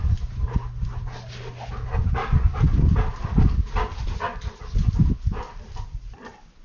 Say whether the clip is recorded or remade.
recorded